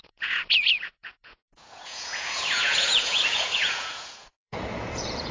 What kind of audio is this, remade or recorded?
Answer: remade